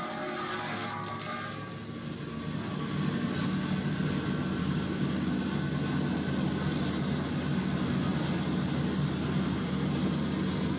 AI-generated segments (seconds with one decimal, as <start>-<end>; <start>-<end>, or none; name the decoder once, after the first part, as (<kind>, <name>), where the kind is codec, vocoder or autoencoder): 4.6-5.3 (codec, DAC)